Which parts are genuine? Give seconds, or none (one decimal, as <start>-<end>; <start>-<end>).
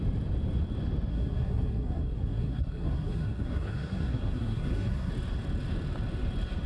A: 0.0-1.1; 5.1-6.7